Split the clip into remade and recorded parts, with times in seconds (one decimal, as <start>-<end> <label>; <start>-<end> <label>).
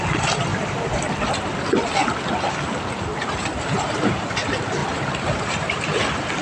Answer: 0.0-0.5 recorded; 0.5-1.0 remade; 1.0-3.1 recorded; 3.1-4.2 remade; 4.2-4.8 recorded; 4.8-6.0 remade; 6.0-6.4 recorded